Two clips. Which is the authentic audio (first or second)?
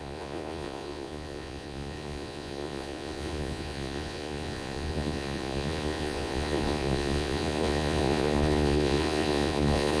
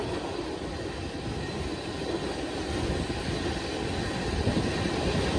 second